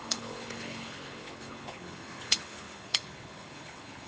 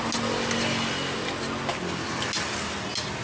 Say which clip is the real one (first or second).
second